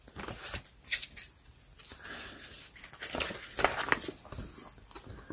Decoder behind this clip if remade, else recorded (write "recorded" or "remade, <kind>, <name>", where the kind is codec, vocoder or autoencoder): recorded